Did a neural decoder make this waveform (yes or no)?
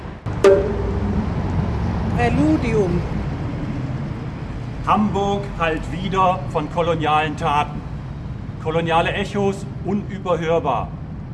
no